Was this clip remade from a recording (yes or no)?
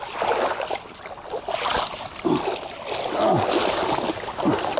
no